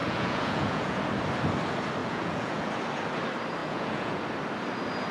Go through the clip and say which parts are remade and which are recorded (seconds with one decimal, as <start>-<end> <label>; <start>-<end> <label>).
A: 0.0-1.0 remade; 1.0-2.0 recorded; 2.0-2.7 remade; 2.7-3.6 recorded; 3.6-4.2 remade; 4.2-5.1 recorded